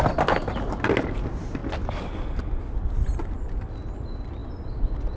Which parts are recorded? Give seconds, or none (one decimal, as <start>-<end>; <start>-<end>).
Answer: 0.0-5.2